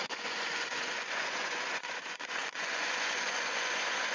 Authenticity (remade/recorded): remade